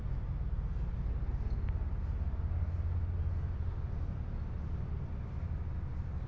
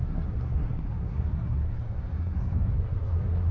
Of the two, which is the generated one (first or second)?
second